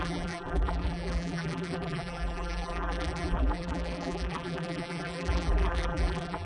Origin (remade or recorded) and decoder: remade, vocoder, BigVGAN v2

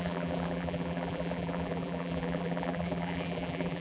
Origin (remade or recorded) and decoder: remade, vocoder, BigVGAN v2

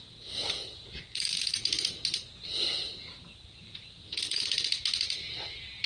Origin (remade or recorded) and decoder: remade, vocoder, BigVGAN v2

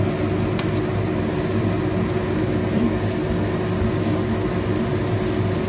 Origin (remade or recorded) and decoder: recorded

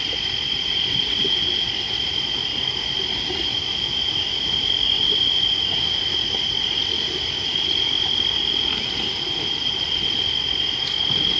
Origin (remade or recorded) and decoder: recorded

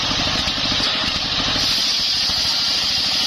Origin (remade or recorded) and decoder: recorded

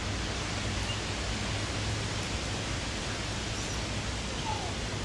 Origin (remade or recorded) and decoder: recorded